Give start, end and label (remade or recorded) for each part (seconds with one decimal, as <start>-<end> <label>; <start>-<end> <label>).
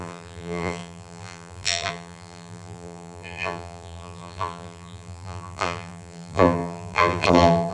0.0-7.7 remade